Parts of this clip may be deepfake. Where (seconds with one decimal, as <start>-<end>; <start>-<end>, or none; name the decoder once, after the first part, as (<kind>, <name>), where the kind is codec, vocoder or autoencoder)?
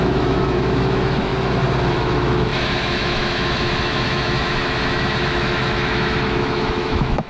0.0-1.3 (autoencoder, DAC-VAE); 1.9-7.3